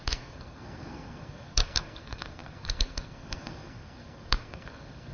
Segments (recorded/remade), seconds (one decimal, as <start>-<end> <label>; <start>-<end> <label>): 0.0-5.1 remade